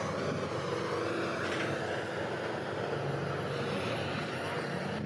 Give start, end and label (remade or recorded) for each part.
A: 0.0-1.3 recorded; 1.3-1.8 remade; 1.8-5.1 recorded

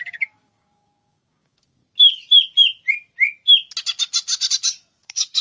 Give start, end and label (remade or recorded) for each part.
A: 0.0-1.8 remade; 1.8-5.0 recorded; 5.0-5.4 remade